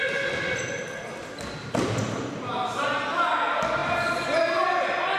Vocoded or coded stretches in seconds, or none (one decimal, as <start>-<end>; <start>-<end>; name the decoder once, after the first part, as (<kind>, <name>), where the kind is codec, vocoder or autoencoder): none